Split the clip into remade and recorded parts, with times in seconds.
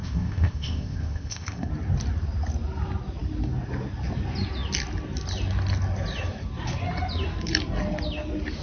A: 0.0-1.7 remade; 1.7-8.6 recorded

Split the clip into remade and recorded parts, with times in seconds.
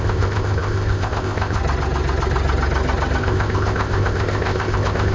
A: 0.0-1.6 remade; 1.6-3.2 recorded; 3.2-5.1 remade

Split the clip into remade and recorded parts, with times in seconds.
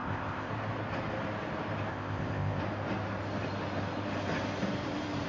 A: 0.0-0.5 remade; 0.5-1.9 recorded; 1.9-2.6 remade; 2.6-5.3 recorded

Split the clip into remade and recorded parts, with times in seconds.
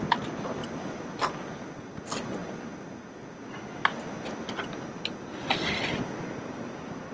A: 0.0-7.1 recorded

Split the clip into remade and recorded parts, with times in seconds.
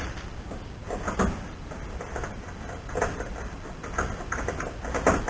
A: 0.0-5.3 recorded